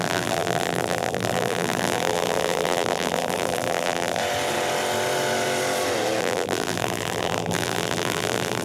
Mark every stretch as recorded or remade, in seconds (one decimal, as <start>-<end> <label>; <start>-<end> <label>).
0.0-4.2 remade; 4.2-6.2 recorded; 6.2-8.6 remade